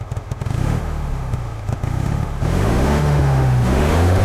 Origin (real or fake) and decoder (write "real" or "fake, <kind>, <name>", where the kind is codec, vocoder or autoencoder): fake, autoencoder, DAC-VAE